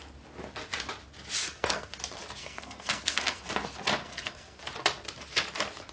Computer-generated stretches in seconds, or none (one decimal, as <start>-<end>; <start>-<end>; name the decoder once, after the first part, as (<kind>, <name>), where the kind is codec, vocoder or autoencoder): 1.4-1.9 (codec, SNAC); 2.4-3.5; 4.0-4.6